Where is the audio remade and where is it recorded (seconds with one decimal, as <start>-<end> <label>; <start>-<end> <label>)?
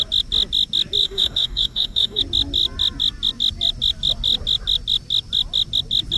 0.0-1.0 recorded; 1.0-2.2 remade; 2.2-6.2 recorded